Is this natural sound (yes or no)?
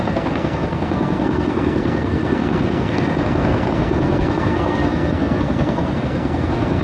no